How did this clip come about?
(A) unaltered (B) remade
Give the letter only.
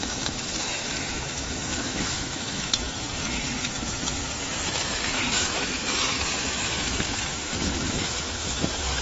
B